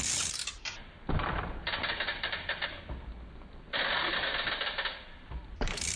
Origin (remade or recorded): recorded